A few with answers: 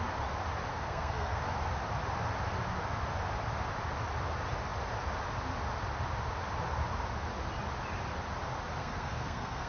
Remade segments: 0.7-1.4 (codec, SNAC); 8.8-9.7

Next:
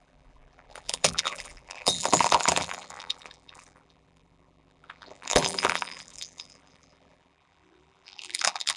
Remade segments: 0.0-8.8 (vocoder, BigVGAN v2)

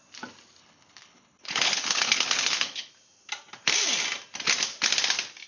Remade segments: 0.6-2.9 (codec, HILCodec)

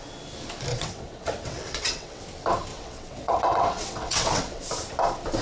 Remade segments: 0.7-2.2 (vocoder, WaveNeXt); 2.7-4.7

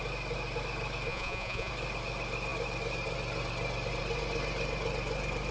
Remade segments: 1.1-1.7 (vocoder, Vocos)

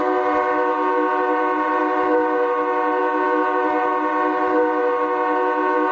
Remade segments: none

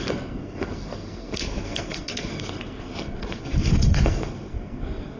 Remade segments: 0.0-5.2 (codec, SNAC)